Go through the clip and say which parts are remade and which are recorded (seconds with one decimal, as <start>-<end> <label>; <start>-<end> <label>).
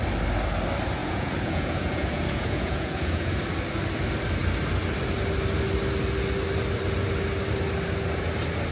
0.0-1.0 recorded; 1.0-3.3 remade; 3.3-8.7 recorded